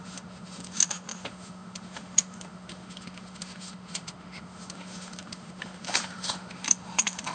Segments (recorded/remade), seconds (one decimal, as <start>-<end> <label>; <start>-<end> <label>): 0.0-7.3 remade